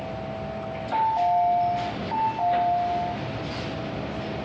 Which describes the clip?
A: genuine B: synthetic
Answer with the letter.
A